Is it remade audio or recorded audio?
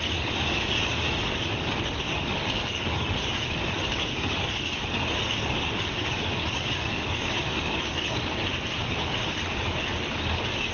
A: remade